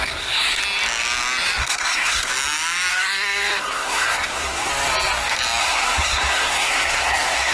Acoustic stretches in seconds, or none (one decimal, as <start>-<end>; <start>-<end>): 0.6-1.6; 2.3-2.9; 4.7-5.6